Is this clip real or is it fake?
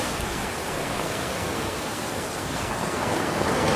fake